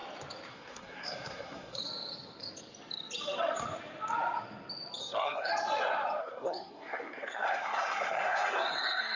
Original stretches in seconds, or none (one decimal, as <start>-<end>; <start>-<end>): 0.0-0.5; 1.8-5.0; 5.5-6.2